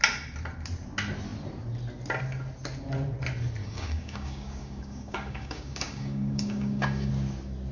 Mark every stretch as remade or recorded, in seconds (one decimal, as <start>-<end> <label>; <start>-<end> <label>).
0.0-3.6 recorded; 3.6-7.1 remade; 7.1-7.7 recorded